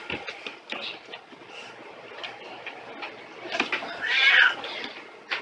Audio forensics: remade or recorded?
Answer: recorded